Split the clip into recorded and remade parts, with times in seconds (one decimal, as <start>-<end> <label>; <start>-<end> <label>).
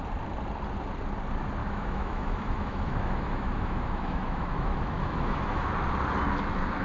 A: 0.0-1.6 recorded; 1.6-5.7 remade; 5.7-6.8 recorded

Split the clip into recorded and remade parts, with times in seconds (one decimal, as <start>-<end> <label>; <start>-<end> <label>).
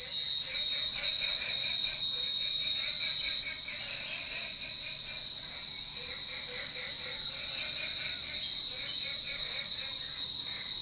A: 0.0-0.9 recorded; 0.9-2.0 remade; 2.0-10.8 recorded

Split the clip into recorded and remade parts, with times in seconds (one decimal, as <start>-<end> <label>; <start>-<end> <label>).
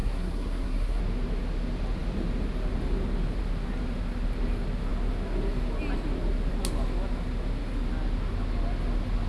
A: 0.0-1.0 remade; 1.0-9.3 recorded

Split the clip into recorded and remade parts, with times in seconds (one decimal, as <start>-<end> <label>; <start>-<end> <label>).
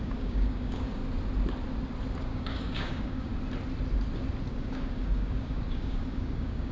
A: 0.0-1.0 remade; 1.0-2.2 recorded; 2.2-3.3 remade; 3.3-4.5 recorded; 4.5-6.7 remade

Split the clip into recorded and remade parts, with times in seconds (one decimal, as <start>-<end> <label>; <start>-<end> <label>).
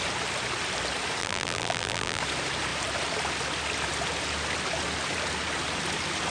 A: 0.0-1.2 recorded; 1.2-2.2 remade; 2.2-6.3 recorded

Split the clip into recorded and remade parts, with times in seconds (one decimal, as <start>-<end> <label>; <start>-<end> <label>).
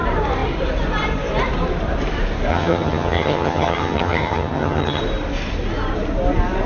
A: 0.0-2.5 recorded; 2.5-5.0 remade; 5.0-6.7 recorded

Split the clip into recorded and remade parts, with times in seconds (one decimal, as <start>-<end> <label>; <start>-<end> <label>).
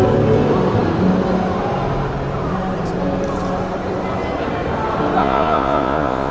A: 0.0-5.2 recorded; 5.2-6.3 remade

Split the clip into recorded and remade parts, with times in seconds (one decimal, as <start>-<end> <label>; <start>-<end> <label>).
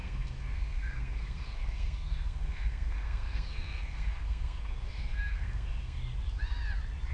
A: 0.0-6.0 remade; 6.0-7.1 recorded